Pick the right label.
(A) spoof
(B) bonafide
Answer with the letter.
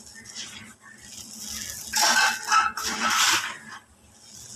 B